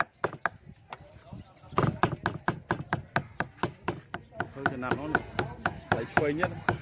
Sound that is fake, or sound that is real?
real